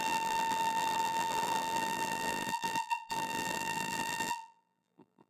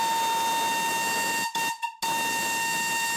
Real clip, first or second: second